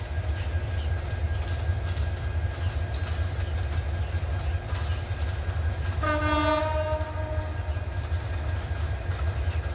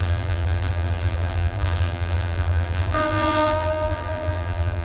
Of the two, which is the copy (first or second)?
second